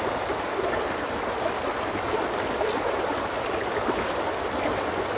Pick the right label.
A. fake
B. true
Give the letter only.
B